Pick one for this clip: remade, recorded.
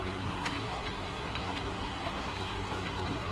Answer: remade